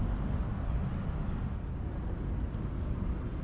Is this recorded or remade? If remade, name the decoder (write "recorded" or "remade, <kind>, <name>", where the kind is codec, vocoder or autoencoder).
recorded